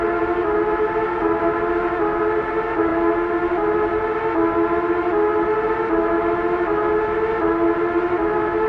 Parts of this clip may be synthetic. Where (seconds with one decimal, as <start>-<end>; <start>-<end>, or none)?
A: none